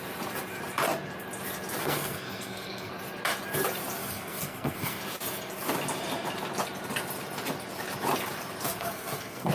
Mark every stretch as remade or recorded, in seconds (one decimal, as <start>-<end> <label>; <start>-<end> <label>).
0.0-1.8 recorded; 1.8-2.9 remade; 2.9-4.0 recorded; 4.0-5.0 remade; 5.0-8.7 recorded; 8.7-9.5 remade